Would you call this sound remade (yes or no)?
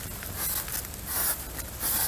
no